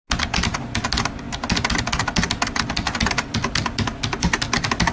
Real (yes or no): yes